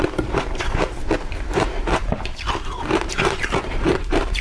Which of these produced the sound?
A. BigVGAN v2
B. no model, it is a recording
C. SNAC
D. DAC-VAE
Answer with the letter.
A